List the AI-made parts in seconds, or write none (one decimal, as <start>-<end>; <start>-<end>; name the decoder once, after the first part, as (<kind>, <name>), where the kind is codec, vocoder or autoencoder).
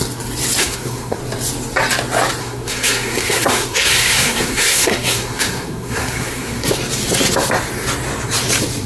0.6-1.2 (codec, SNAC); 2.4-6.7